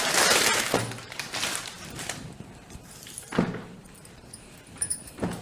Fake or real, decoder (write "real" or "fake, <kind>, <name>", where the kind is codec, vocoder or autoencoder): fake, vocoder, BigVGAN v2